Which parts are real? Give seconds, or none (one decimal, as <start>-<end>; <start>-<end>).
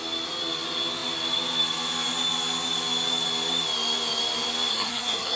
0.0-4.7